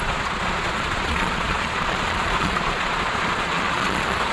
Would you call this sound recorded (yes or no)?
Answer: no